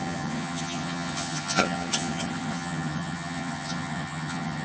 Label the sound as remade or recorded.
remade